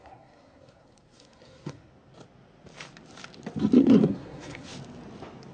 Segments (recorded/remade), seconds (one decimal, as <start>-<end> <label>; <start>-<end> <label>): 0.0-1.9 remade; 1.9-3.8 recorded; 3.8-4.7 remade; 4.7-5.5 recorded